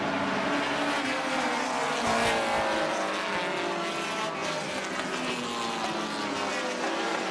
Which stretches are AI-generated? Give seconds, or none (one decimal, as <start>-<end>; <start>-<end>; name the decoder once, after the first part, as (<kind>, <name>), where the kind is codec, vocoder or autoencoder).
none